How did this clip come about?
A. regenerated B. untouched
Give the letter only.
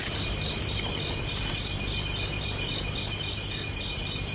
B